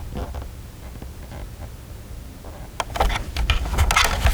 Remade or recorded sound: recorded